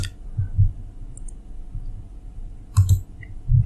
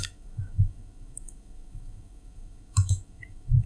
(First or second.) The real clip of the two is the first